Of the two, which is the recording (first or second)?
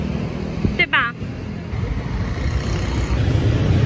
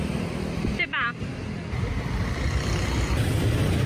first